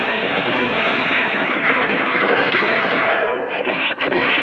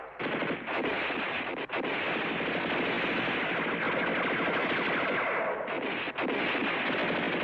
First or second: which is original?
second